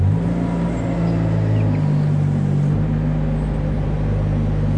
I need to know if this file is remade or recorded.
recorded